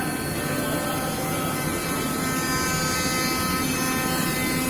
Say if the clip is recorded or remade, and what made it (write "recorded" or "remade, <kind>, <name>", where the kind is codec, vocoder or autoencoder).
recorded